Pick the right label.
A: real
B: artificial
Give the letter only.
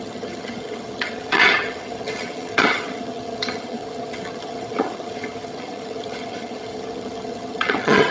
B